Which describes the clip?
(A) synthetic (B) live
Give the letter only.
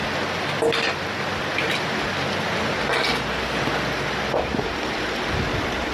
B